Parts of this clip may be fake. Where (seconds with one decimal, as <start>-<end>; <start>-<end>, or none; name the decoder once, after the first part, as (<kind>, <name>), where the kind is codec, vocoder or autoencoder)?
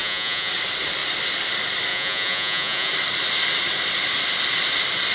0.0-0.5 (vocoder, Vocos); 1.9-2.9